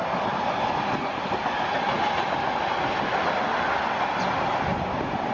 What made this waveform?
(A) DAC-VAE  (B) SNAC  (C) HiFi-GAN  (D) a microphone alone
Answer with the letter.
D